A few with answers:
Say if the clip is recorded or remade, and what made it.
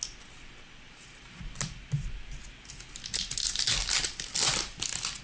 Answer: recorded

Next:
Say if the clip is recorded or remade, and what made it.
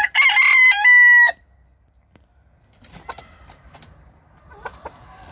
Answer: recorded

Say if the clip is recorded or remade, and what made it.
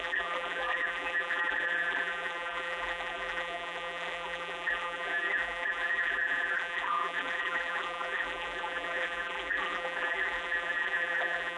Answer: remade, vocoder, BigVGAN v2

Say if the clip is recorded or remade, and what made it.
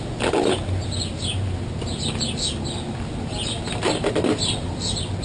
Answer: recorded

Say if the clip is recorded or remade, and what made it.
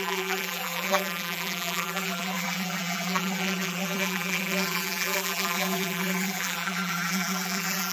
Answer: remade, vocoder, BigVGAN v2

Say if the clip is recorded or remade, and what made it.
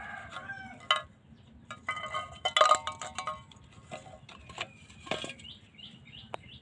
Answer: recorded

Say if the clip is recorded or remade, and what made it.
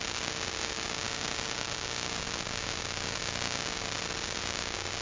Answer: recorded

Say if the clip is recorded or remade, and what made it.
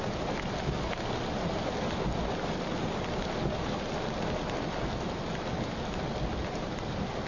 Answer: recorded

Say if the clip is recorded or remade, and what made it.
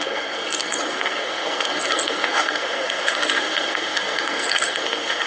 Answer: remade, codec, SNAC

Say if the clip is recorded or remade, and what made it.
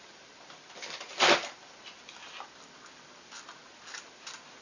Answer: recorded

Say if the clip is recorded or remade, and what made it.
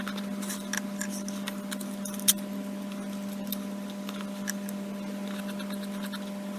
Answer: recorded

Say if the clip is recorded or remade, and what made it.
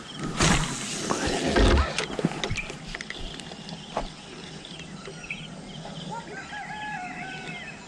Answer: recorded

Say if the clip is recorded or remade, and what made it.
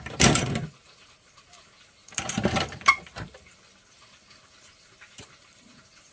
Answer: remade, vocoder, BigVGAN v2